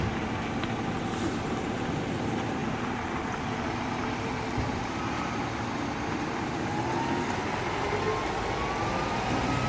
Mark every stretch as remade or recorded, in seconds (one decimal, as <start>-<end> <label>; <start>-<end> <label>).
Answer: 0.0-2.6 recorded; 2.6-6.9 remade; 6.9-9.7 recorded